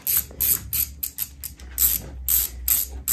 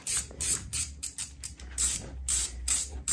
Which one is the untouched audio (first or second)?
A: first